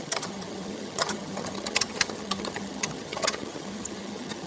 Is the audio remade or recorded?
remade